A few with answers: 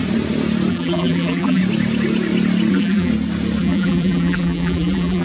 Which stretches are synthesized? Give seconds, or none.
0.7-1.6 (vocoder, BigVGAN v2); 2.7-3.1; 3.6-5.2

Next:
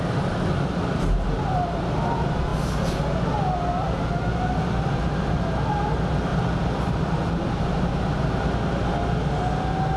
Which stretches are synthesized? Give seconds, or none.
6.3-7.3 (vocoder, BigVGAN v2)

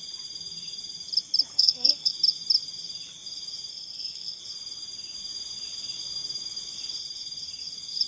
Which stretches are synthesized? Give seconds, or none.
1.5-2.1 (codec, SNAC); 3.7-4.4

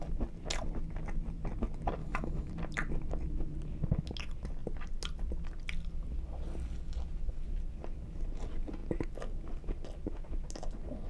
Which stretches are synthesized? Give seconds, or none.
2.0-2.5 (autoencoder, DAC-VAE)

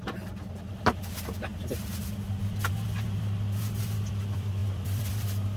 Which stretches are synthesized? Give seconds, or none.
0.0-1.5 (vocoder, BigVGAN v2); 3.8-5.6

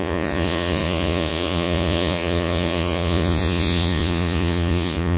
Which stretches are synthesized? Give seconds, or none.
0.0-5.2 (vocoder, Vocos)

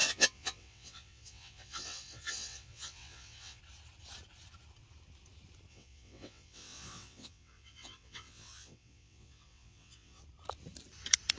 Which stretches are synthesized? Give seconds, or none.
0.0-3.6 (vocoder, WaveNeXt); 5.7-10.2

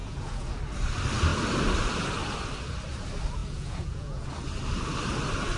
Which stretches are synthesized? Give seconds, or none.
0.0-0.5 (vocoder, Vocos); 3.4-4.3